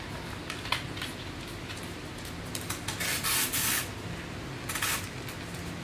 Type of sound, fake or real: real